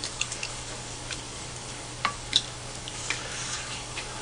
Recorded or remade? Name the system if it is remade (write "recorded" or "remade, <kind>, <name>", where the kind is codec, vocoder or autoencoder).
remade, codec, DAC